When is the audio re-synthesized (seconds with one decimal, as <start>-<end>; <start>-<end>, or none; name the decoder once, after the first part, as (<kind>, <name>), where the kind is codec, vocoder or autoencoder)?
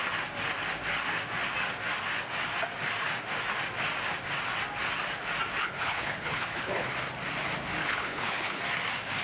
5.6-6.9 (codec, HILCodec); 7.8-8.6